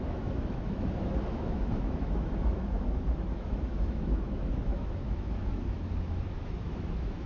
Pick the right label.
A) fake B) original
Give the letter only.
A